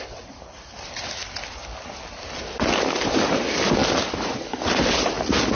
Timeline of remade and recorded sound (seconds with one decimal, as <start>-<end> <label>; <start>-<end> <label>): 0.0-5.6 recorded